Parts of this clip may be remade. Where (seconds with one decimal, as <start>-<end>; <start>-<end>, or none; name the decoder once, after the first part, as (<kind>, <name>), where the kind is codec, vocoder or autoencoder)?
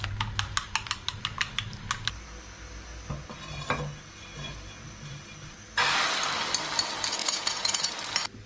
7.2-7.8 (vocoder, Vocos)